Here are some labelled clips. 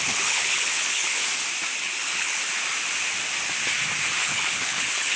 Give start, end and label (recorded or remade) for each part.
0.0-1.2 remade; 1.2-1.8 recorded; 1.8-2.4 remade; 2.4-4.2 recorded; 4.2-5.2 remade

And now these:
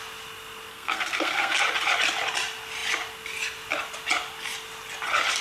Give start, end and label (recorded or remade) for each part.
0.0-0.7 recorded; 0.7-1.6 remade; 1.6-5.4 recorded